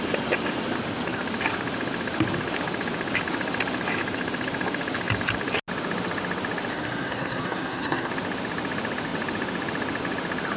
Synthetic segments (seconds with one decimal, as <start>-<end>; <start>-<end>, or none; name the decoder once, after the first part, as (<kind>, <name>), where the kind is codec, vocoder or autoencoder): 6.7-8.1 (codec, SNAC)